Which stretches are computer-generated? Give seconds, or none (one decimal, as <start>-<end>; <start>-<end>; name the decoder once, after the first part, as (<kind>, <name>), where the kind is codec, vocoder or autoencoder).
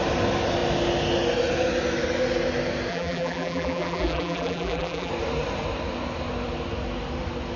2.9-5.1 (vocoder, BigVGAN v2)